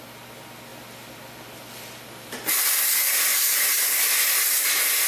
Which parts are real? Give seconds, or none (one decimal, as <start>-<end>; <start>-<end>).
0.0-3.3; 4.0-5.1